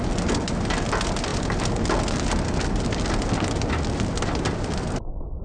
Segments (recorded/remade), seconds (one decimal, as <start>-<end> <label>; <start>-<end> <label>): 0.0-5.4 recorded